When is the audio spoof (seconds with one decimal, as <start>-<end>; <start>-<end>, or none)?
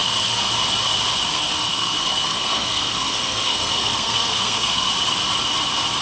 0.0-0.5; 1.3-4.9